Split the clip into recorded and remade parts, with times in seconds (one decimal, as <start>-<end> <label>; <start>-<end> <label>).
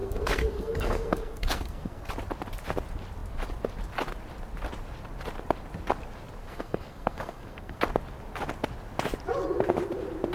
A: 0.0-2.1 remade; 2.1-6.4 recorded; 6.4-7.8 remade; 7.8-10.3 recorded